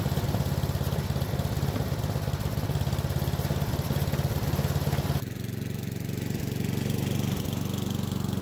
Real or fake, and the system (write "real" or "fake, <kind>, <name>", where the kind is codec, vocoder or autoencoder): real